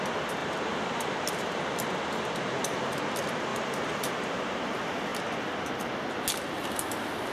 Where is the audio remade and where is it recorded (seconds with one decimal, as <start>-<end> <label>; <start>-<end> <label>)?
0.0-0.4 recorded; 0.4-2.0 remade; 2.0-3.5 recorded; 3.5-4.6 remade; 4.6-7.3 recorded